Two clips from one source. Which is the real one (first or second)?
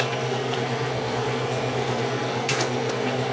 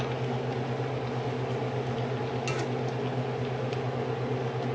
second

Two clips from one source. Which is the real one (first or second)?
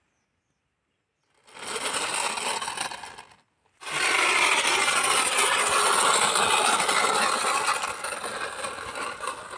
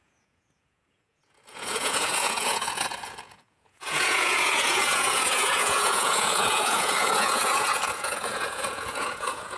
first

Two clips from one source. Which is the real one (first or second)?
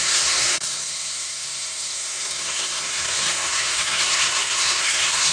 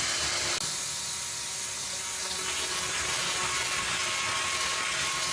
second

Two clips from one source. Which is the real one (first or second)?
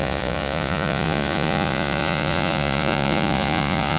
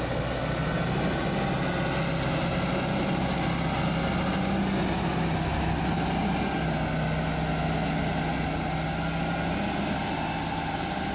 second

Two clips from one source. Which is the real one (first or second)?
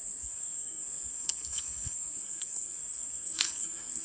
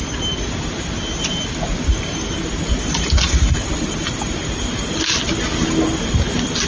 second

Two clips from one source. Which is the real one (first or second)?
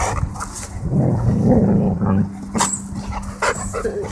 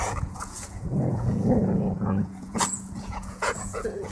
first